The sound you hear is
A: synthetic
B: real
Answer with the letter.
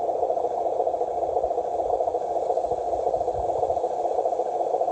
B